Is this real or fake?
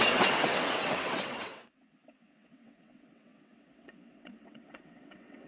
fake